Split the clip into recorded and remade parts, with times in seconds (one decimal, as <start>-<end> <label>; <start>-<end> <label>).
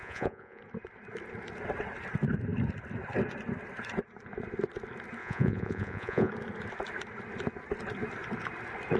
0.0-0.6 remade; 0.6-5.2 recorded; 5.2-6.3 remade; 6.3-9.0 recorded